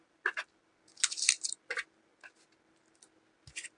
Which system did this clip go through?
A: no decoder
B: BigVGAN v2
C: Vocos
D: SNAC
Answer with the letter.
A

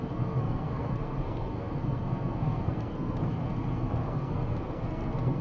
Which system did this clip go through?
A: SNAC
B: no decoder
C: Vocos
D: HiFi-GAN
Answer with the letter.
A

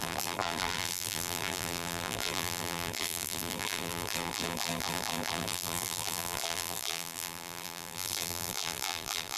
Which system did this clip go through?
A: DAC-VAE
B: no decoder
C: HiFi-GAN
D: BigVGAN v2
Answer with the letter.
D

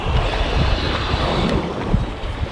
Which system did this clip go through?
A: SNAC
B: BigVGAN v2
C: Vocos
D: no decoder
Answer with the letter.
B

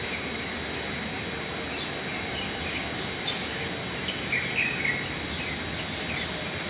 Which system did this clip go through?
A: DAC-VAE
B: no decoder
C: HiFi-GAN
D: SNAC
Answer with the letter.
B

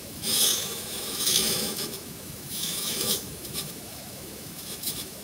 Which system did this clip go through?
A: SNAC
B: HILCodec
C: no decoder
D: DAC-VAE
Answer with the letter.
D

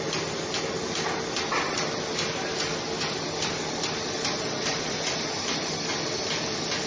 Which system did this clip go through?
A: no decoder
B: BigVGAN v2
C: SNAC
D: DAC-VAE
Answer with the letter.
A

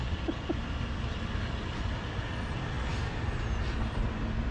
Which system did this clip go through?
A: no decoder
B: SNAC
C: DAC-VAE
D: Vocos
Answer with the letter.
A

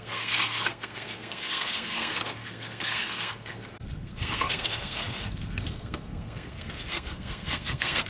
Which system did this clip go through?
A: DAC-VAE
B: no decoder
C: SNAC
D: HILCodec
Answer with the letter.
C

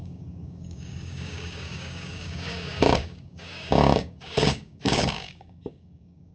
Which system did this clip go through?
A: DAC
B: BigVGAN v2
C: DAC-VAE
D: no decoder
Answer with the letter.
A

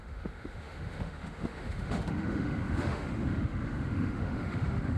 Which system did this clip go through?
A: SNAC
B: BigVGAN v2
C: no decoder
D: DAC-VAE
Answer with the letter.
D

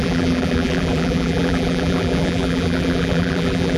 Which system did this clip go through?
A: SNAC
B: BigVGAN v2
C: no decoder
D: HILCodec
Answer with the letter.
B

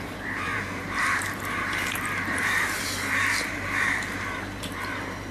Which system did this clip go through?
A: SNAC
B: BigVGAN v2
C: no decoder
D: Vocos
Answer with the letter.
B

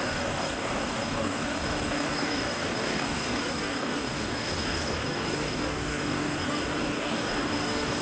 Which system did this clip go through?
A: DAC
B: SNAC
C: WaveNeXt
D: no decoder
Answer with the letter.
A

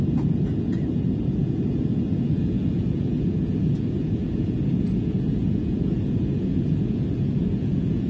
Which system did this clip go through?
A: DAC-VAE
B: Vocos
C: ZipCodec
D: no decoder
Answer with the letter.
B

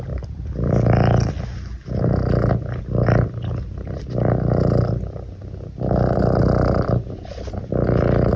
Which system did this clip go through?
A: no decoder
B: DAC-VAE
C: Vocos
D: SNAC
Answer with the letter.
A